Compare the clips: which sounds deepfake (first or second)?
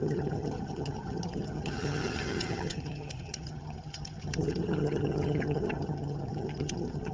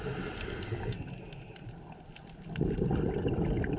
first